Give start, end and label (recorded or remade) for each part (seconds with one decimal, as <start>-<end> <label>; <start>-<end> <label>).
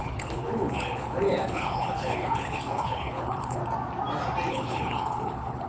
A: 0.0-3.6 remade; 3.6-4.5 recorded; 4.5-5.7 remade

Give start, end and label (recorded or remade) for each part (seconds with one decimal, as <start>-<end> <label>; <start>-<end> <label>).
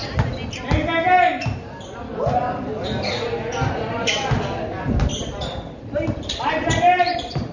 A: 0.0-7.5 recorded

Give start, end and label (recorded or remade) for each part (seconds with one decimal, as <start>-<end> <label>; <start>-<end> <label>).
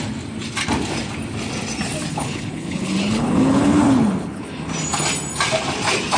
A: 0.0-2.1 recorded; 2.1-4.4 remade; 4.4-6.2 recorded